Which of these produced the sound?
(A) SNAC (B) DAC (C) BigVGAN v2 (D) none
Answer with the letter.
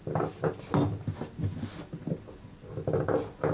D